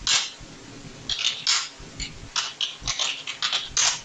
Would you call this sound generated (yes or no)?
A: no